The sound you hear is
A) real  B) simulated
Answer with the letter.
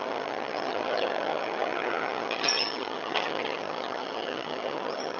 B